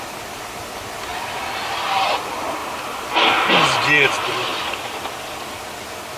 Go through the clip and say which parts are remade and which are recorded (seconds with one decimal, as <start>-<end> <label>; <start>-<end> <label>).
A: 0.0-6.2 recorded